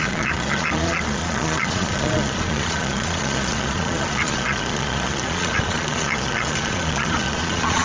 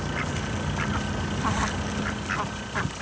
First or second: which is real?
second